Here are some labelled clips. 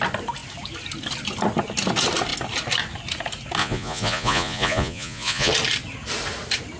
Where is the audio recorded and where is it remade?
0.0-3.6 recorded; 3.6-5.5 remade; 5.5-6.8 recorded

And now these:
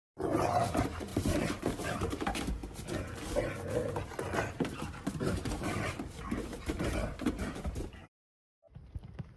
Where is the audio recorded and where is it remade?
0.0-2.6 remade; 2.6-4.5 recorded; 4.5-9.4 remade

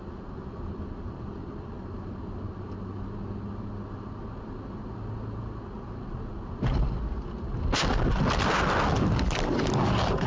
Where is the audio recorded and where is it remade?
0.0-10.3 recorded

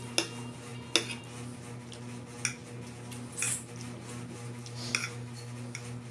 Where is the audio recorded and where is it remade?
0.0-6.1 recorded

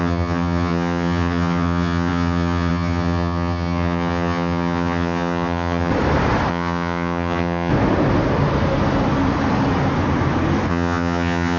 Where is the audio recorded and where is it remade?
0.0-5.9 remade; 5.9-6.5 recorded; 6.5-7.7 remade; 7.7-10.7 recorded; 10.7-11.6 remade

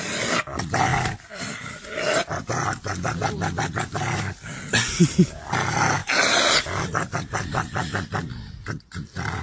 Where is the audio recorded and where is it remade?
0.0-9.4 recorded